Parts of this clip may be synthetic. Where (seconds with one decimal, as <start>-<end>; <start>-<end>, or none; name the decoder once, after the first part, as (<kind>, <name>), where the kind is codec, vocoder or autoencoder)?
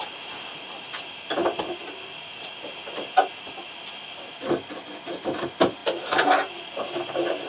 none